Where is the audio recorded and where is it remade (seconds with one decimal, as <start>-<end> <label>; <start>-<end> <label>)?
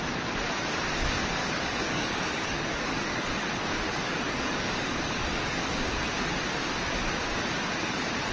0.0-1.4 recorded; 1.4-5.7 remade; 5.7-8.3 recorded